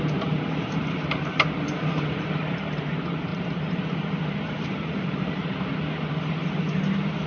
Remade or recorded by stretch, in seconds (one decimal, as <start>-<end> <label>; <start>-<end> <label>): 0.0-6.4 remade; 6.4-7.3 recorded